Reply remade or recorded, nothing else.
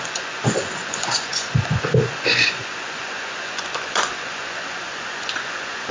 remade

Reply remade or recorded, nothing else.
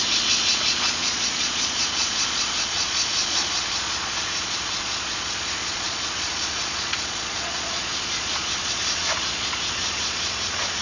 remade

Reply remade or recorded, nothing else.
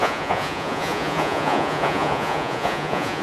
remade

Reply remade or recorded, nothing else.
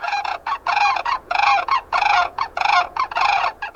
remade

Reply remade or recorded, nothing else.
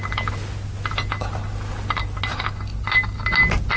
recorded